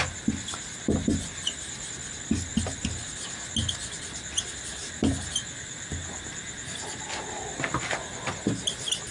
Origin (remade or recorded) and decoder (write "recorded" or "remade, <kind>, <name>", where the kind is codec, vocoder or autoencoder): recorded